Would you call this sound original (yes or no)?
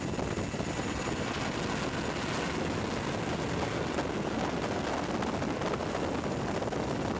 yes